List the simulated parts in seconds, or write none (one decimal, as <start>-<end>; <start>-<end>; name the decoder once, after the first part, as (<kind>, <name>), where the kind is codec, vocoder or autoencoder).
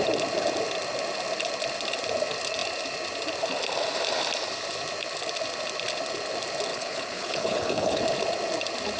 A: 6.7-8.0 (codec, HILCodec)